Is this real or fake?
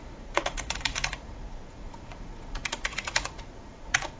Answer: fake